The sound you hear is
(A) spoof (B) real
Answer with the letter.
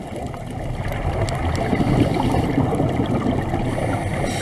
B